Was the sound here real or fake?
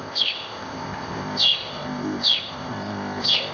fake